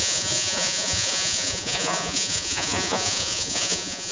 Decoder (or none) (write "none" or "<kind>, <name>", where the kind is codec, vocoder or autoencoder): vocoder, Vocos